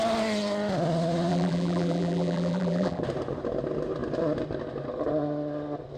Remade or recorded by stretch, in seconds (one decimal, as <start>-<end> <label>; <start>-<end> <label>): 0.0-1.3 recorded; 1.3-3.0 remade; 3.0-6.0 recorded